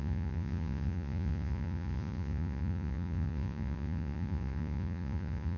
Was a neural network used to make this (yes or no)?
yes